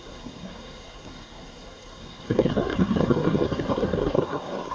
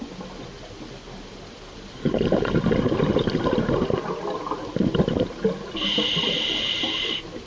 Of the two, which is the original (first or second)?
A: second